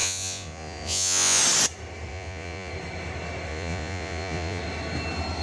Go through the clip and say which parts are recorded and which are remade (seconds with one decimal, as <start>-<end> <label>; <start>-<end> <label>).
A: 0.0-1.4 remade; 1.4-2.1 recorded; 2.1-2.7 remade; 2.7-3.5 recorded; 3.5-4.6 remade; 4.6-5.4 recorded